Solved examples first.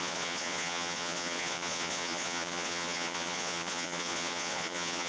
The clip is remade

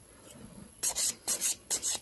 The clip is remade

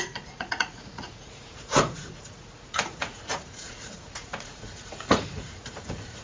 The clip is remade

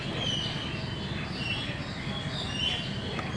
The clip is recorded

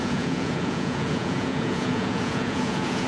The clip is remade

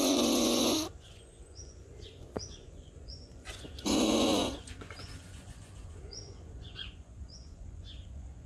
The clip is remade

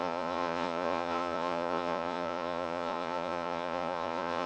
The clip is remade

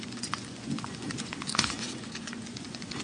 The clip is remade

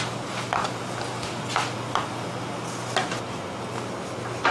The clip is recorded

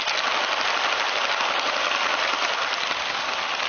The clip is recorded